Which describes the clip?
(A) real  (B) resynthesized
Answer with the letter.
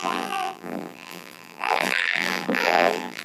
B